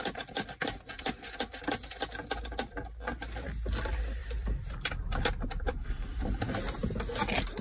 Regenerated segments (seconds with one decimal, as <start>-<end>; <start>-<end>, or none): 4.2-5.2